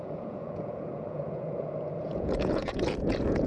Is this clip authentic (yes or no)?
no